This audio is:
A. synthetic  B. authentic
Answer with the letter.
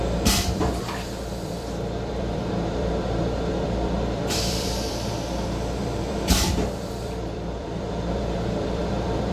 A